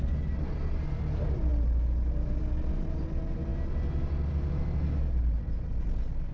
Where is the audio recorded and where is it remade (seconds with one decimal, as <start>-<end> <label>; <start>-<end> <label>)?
0.0-6.3 recorded